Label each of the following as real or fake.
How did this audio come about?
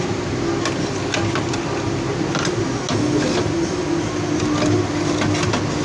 real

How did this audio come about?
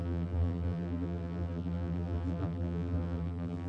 fake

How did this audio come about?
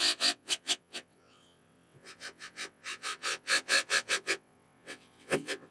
fake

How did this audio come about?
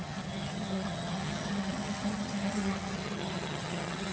fake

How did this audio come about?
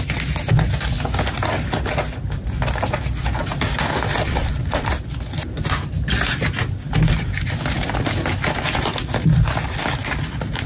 real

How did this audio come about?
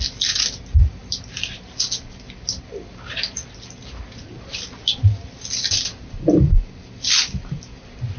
real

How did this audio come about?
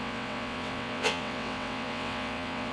fake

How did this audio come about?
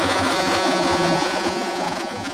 fake